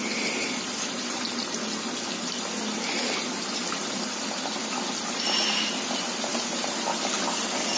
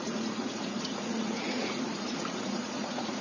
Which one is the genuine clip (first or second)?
first